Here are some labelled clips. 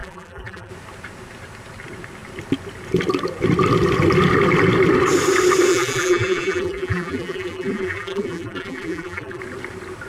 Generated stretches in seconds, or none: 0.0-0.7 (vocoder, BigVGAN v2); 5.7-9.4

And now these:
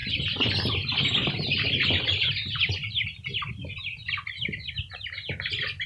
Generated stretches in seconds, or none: none

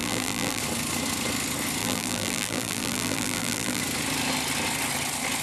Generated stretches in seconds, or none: 0.0-0.6 (vocoder, BigVGAN v2); 1.8-3.8

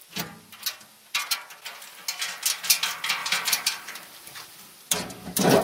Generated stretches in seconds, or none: 3.2-5.6 (vocoder, BigVGAN v2)

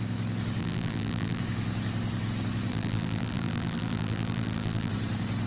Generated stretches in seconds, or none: 0.6-1.4 (vocoder, BigVGAN v2); 2.7-4.9

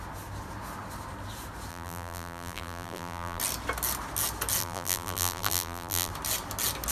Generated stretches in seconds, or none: 1.7-3.4 (vocoder, BigVGAN v2); 4.6-6.1

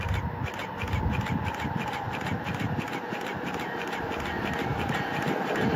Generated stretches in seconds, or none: 0.6-4.1 (vocoder, BigVGAN v2); 4.7-5.8

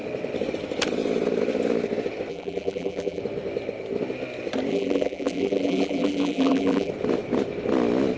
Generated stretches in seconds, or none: 2.3-3.2 (vocoder, BigVGAN v2); 4.7-6.9